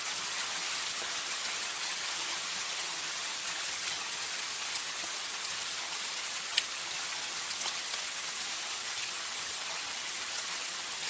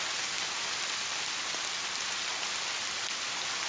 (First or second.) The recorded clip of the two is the second